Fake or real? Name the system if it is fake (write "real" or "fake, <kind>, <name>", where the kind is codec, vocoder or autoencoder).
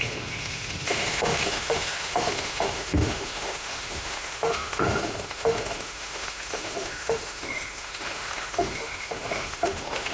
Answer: fake, autoencoder, DAC-VAE